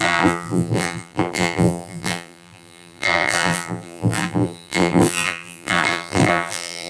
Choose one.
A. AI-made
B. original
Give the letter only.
A